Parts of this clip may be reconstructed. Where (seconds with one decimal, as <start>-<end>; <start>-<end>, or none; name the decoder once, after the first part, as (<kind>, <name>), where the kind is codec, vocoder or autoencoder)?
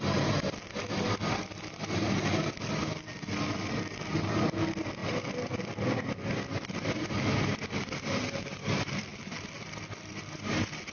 9.1-10.1 (vocoder, BigVGAN v2)